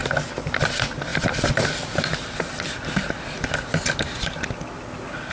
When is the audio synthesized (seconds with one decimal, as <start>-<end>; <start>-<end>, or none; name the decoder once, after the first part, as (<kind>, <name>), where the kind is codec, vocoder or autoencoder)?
1.1-2.7 (vocoder, BigVGAN v2)